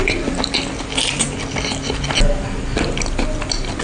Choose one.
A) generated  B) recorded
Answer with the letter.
B